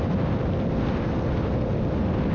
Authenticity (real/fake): real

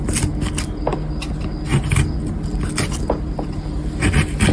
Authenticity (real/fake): real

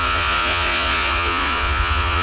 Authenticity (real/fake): fake